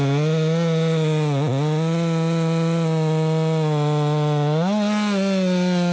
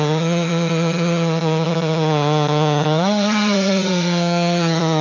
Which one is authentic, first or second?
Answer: first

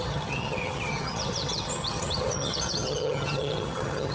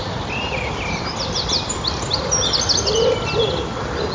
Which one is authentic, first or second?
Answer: second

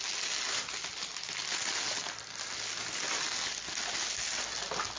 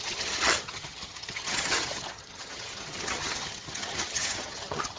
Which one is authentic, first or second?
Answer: first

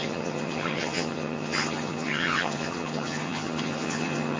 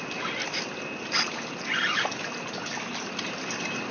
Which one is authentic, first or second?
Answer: second